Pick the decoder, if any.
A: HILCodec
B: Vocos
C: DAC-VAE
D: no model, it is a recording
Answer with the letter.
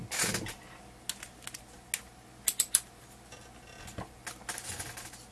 D